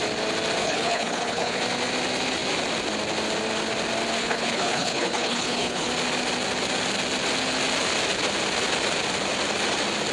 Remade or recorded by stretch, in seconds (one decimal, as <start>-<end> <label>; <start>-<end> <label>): 0.0-0.6 recorded; 0.6-1.6 remade; 1.6-4.2 recorded; 4.2-5.9 remade; 5.9-10.1 recorded